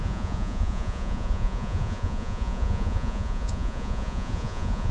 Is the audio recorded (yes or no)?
no